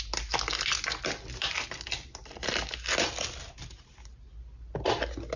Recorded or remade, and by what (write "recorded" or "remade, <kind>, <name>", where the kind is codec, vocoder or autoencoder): recorded